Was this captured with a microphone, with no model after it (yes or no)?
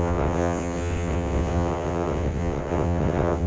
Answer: no